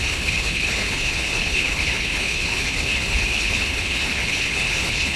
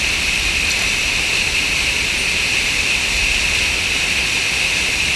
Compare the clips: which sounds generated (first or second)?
first